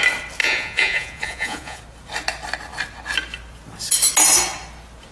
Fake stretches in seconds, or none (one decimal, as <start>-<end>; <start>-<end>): 0.4-1.8